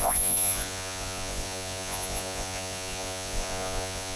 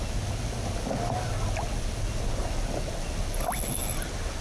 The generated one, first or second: first